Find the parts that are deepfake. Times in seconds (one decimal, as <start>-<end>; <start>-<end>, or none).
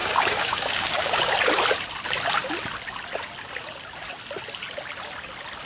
0.0-1.2